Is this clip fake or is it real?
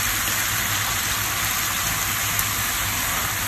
real